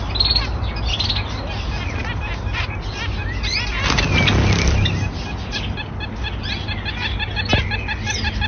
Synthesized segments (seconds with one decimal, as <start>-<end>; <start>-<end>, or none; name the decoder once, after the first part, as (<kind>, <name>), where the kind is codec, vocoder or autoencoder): none